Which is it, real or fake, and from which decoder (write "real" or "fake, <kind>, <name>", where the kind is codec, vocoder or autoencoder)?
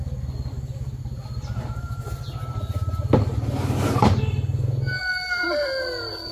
real